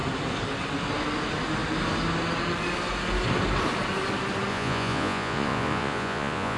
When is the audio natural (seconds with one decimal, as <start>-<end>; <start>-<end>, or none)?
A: 0.0-4.5